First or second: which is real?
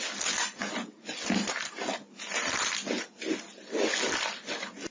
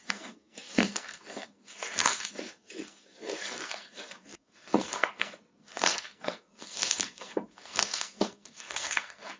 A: first